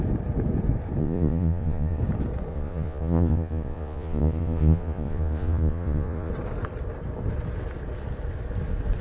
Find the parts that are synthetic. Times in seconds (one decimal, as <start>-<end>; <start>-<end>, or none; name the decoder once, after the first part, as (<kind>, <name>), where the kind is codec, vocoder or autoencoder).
1.0-2.0 (vocoder, Vocos); 2.5-6.3